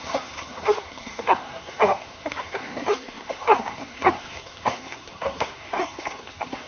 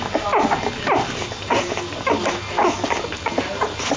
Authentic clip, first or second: second